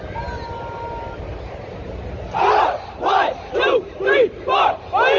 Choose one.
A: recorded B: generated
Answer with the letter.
A